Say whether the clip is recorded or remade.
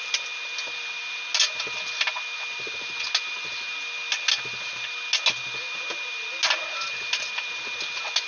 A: recorded